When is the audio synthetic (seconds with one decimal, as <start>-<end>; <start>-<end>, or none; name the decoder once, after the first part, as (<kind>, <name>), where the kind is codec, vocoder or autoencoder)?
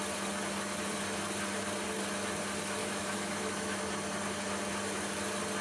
2.8-3.8 (autoencoder, DAC-VAE)